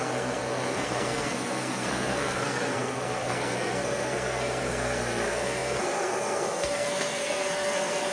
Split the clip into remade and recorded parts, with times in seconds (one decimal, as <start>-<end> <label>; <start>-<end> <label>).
0.0-8.1 remade

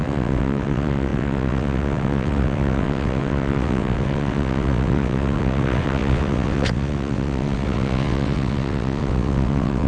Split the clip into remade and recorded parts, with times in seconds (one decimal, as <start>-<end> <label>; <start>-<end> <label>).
0.0-9.9 remade

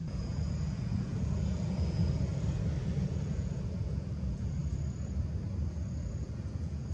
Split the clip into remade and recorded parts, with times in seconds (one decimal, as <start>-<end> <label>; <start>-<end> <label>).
0.0-2.3 remade; 2.3-3.1 recorded; 3.1-4.6 remade; 4.6-6.2 recorded; 6.2-6.9 remade

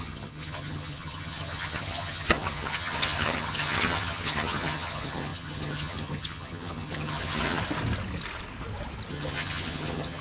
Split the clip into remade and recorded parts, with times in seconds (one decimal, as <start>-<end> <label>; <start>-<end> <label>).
0.0-7.6 remade; 7.6-9.1 recorded; 9.1-10.2 remade

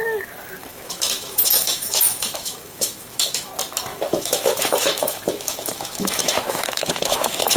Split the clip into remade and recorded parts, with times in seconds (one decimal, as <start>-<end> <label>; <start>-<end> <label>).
0.0-0.7 recorded; 0.7-3.5 remade; 3.5-3.9 recorded; 3.9-7.6 remade

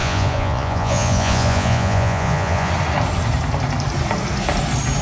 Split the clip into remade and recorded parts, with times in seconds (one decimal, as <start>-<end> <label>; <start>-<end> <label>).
0.0-2.7 remade; 2.7-5.0 recorded